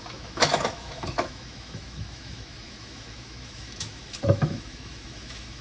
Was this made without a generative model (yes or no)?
no